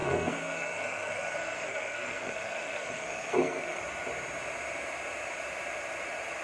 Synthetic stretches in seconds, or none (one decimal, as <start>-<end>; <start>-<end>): 0.0-3.8